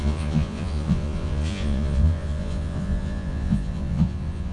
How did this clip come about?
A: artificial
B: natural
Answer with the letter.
A